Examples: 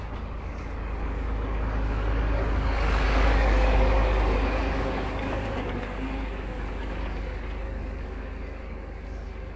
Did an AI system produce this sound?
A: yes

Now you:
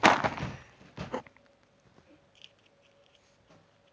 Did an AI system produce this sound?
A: no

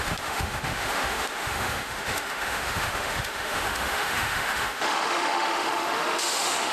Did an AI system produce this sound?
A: yes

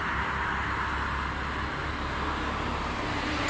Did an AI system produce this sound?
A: no